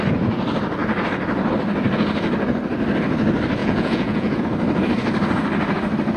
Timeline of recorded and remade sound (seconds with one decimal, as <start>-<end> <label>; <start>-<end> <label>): 0.0-3.6 recorded; 3.6-4.4 remade; 4.4-6.2 recorded